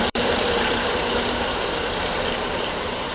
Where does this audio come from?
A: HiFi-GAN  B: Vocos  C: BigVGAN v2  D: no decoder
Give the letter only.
C